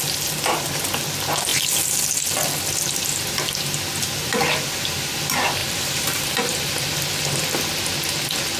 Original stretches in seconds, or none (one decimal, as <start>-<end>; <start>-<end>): 0.0-5.6; 7.0-8.6